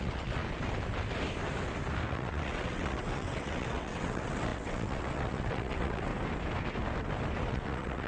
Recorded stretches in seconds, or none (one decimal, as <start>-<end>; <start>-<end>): 0.4-2.1; 6.1-7.5